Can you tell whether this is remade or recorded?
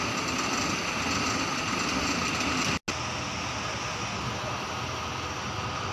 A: recorded